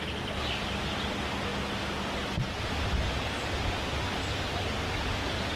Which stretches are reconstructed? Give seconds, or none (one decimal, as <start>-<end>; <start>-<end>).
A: none